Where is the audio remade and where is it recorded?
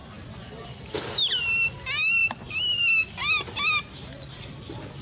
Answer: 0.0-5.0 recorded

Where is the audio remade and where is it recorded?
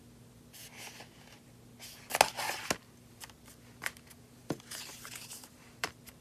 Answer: 0.0-4.4 recorded; 4.4-6.2 remade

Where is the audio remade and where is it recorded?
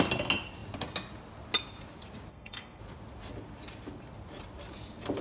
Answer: 0.0-2.3 recorded; 2.3-2.8 remade; 2.8-5.2 recorded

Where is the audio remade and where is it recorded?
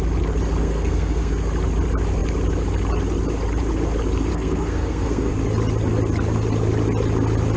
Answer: 0.0-0.6 recorded; 0.6-1.3 remade; 1.3-4.3 recorded; 4.3-5.3 remade; 5.3-7.6 recorded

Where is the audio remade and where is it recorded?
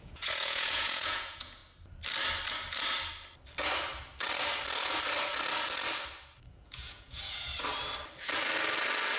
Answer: 0.0-1.6 remade; 1.6-6.5 recorded; 6.5-7.5 remade; 7.5-9.2 recorded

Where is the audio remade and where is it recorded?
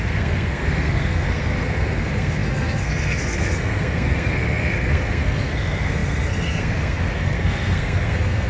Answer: 0.0-8.5 remade